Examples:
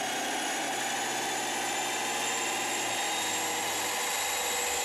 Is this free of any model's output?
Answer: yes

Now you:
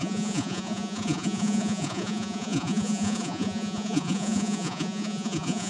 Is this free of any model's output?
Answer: no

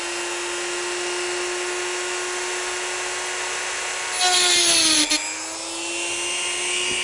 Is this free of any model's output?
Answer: yes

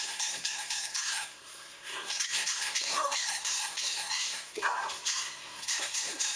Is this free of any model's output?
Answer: no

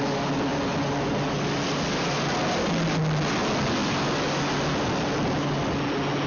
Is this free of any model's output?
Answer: yes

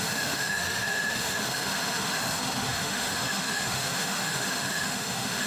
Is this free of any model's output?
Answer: no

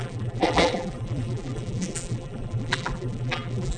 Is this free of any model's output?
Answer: no